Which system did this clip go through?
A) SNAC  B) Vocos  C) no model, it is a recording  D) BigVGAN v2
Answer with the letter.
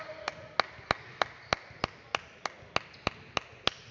C